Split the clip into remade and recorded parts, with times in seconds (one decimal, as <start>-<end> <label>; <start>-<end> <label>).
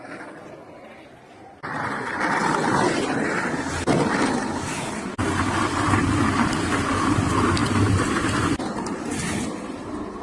0.0-10.2 recorded